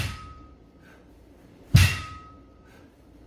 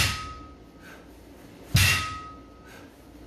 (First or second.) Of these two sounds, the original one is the second